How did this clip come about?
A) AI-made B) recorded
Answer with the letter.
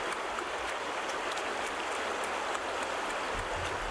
B